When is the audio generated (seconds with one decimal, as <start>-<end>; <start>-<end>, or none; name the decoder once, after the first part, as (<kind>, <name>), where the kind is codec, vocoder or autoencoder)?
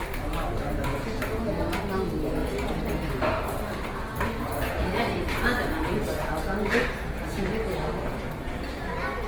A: 0.9-1.8 (vocoder, Vocos)